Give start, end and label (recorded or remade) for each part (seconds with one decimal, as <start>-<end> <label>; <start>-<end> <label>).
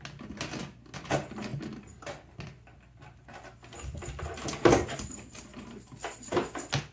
0.0-6.9 recorded